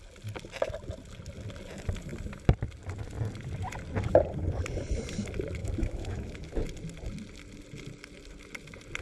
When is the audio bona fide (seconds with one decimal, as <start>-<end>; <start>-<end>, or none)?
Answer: 0.0-5.6; 6.5-9.0